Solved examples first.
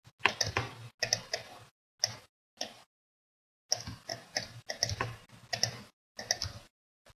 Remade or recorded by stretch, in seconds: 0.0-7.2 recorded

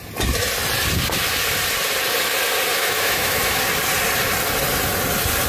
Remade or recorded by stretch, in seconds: 0.0-2.8 recorded; 2.8-3.6 remade; 3.6-5.5 recorded

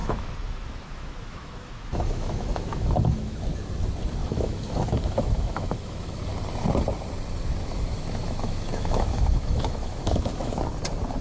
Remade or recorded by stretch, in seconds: 0.0-3.4 remade; 3.4-4.2 recorded; 4.2-6.2 remade; 6.2-7.6 recorded; 7.6-10.6 remade; 10.6-11.2 recorded

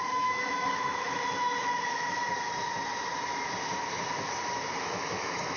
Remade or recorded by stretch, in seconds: 0.0-2.2 remade; 2.2-4.8 recorded; 4.8-5.6 remade

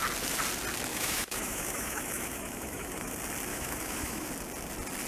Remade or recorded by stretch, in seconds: 0.0-0.9 recorded; 0.9-3.1 remade; 3.1-3.5 recorded; 3.5-4.3 remade; 4.3-5.1 recorded

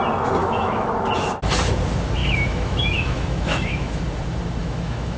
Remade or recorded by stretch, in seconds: 0.0-0.4 recorded; 0.4-0.9 remade; 0.9-2.2 recorded; 2.2-4.0 remade; 4.0-4.6 recorded; 4.6-5.2 remade

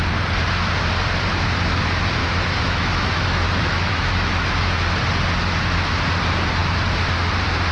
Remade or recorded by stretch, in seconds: 0.0-2.2 recorded; 2.2-5.0 remade; 5.0-7.7 recorded

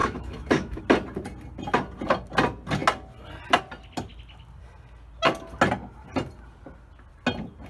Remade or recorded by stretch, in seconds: 0.0-0.8 remade; 0.8-7.7 recorded